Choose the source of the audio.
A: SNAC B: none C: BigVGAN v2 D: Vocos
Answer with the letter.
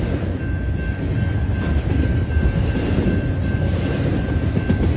B